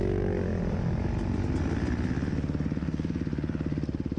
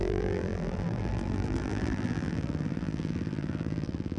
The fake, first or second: second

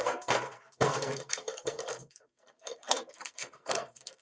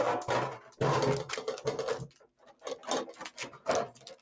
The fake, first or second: first